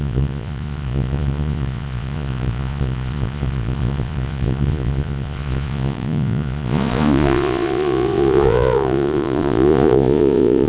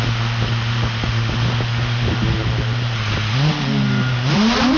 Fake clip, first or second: first